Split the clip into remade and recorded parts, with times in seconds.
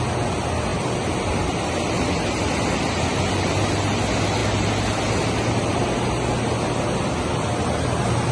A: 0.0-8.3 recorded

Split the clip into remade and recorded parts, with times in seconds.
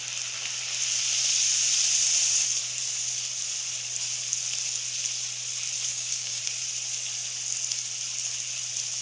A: 0.0-5.9 recorded; 5.9-6.4 remade; 6.4-9.0 recorded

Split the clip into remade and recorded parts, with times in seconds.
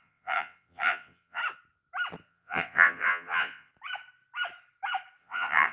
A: 0.0-1.4 remade; 1.4-2.2 recorded; 2.2-3.7 remade; 3.7-5.2 recorded; 5.2-5.7 remade